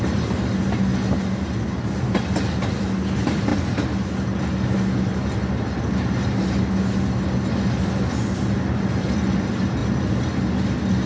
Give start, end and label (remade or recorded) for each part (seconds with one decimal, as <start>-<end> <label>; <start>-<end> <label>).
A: 0.0-11.1 recorded